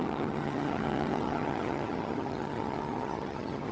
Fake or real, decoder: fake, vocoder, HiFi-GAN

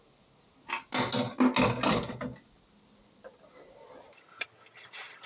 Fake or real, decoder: real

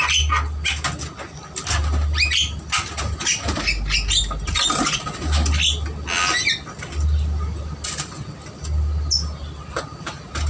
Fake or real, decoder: real